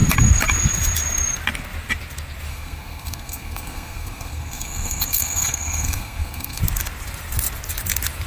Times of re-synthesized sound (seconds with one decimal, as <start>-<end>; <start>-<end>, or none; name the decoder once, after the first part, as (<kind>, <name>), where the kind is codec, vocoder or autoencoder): 2.5-6.6 (codec, SNAC)